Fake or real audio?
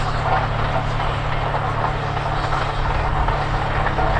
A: real